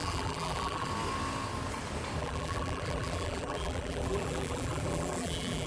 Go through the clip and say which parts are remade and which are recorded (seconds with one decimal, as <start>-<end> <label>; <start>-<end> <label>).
0.0-0.9 remade; 0.9-2.2 recorded; 2.2-5.7 remade